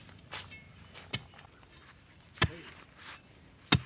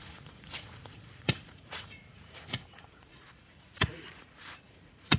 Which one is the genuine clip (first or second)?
first